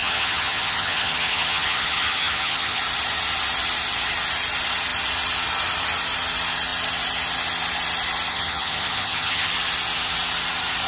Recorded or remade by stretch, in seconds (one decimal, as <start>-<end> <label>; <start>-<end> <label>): 0.0-2.8 remade; 2.8-8.3 recorded; 8.3-9.5 remade; 9.5-10.9 recorded